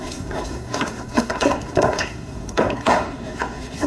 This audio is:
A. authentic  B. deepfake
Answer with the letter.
B